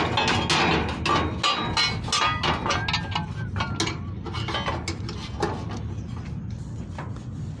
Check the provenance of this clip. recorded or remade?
recorded